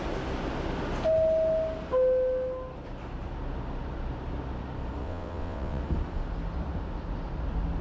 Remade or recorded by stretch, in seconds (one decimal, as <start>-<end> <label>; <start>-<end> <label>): 0.0-5.0 recorded; 5.0-5.8 remade; 5.8-7.8 recorded